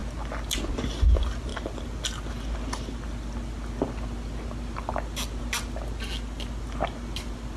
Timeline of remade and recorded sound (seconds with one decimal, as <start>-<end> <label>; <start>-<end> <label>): 0.0-7.6 recorded